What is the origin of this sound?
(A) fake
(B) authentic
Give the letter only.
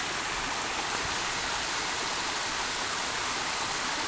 B